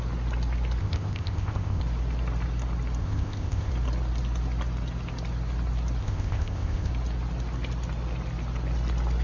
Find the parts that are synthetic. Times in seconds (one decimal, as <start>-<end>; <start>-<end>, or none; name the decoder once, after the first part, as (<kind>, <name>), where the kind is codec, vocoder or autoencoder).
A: 0.8-1.8 (codec, ZipCodec); 3.0-3.7; 6.0-6.9